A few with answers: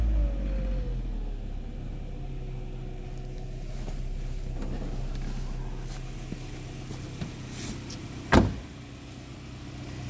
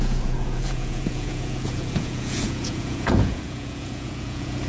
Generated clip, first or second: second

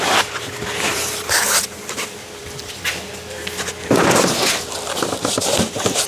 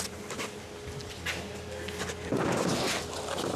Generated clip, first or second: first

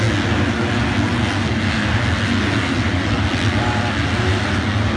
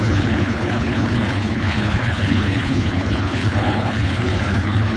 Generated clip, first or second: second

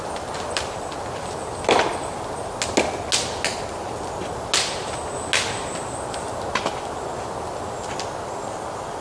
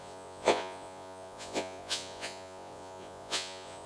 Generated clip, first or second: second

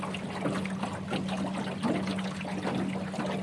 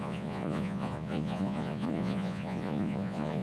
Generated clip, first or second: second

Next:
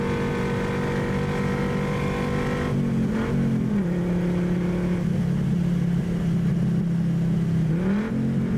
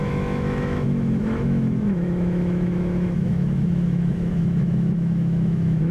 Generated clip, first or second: second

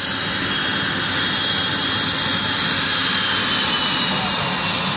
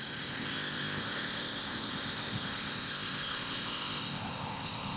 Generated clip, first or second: second